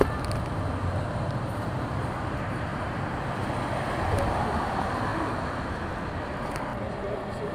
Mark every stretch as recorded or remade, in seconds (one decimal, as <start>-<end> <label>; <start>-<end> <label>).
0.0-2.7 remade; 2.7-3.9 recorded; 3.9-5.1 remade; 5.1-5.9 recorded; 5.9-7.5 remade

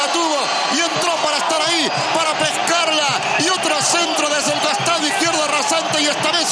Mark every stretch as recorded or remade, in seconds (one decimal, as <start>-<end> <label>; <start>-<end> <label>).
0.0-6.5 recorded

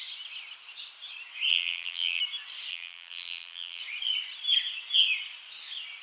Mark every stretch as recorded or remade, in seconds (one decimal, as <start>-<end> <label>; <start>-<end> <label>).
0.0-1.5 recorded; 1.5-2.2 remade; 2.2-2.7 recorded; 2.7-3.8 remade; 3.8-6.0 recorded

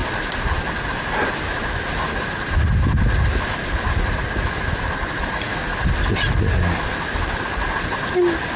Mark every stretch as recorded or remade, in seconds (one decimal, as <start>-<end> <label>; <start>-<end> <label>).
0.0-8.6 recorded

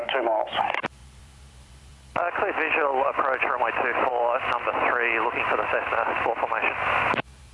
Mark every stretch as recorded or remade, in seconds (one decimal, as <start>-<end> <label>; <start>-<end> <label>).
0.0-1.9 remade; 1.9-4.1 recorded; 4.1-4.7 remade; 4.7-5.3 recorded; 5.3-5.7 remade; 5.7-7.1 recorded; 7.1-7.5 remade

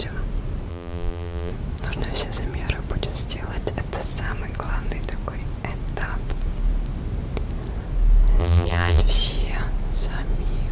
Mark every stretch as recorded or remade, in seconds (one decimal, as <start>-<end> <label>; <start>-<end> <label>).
0.0-0.7 recorded; 0.7-1.5 remade; 1.5-8.4 recorded; 8.4-9.0 remade; 9.0-10.7 recorded